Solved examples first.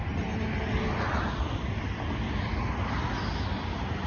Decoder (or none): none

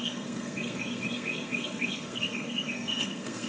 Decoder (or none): codec, SNAC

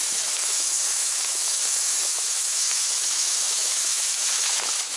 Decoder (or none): autoencoder, DAC-VAE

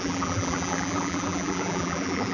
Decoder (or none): vocoder, BigVGAN v2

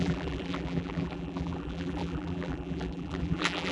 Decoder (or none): vocoder, BigVGAN v2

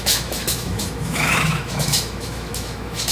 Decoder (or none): autoencoder, DAC-VAE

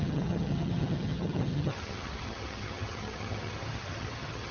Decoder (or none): vocoder, HiFi-GAN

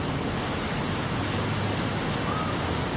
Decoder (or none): none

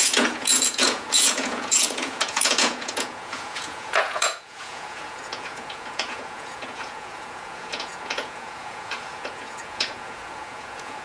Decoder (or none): vocoder, Vocos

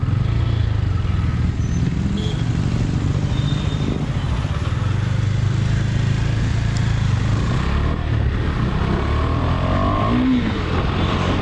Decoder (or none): none